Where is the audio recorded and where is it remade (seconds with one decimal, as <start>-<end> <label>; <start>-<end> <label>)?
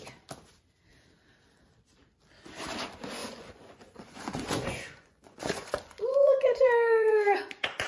0.0-3.2 recorded; 3.2-7.9 remade